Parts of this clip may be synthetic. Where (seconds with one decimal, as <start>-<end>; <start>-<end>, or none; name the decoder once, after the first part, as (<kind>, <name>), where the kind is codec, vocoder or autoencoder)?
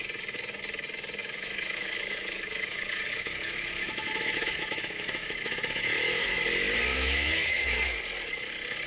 1.2-6.4 (autoencoder, DAC-VAE); 6.9-8.0